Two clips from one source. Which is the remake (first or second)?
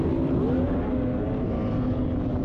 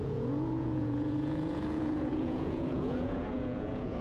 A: second